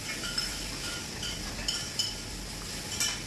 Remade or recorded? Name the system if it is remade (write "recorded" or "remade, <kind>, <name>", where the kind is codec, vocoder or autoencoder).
recorded